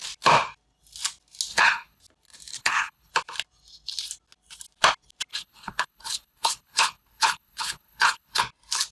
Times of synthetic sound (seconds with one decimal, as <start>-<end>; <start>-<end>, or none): 1.5-2.0; 2.5-3.1; 5.3-8.4